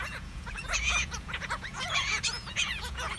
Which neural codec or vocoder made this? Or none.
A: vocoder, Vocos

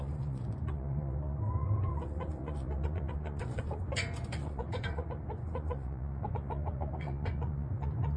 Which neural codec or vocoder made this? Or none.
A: vocoder, Vocos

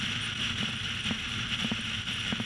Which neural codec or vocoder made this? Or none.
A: none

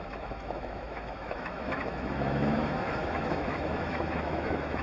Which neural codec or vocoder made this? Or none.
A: autoencoder, DAC-VAE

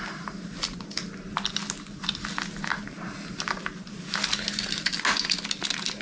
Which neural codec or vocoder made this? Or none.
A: none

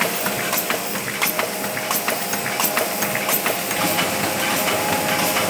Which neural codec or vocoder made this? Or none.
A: none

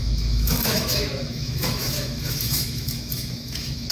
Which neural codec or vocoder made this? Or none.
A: autoencoder, DAC-VAE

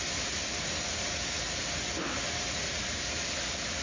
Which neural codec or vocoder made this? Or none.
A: none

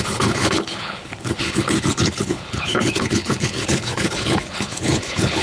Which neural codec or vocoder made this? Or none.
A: codec, HILCodec